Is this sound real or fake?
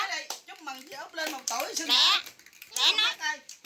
fake